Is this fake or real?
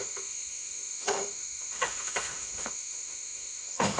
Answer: fake